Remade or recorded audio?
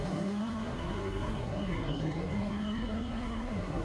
remade